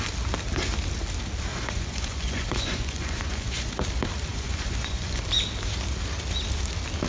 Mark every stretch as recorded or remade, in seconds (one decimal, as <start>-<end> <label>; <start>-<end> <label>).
0.0-1.5 recorded; 1.5-3.7 remade; 3.7-4.3 recorded; 4.3-5.2 remade; 5.2-7.1 recorded